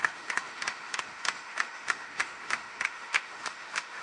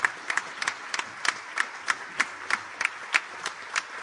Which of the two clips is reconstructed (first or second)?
first